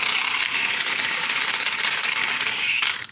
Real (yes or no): no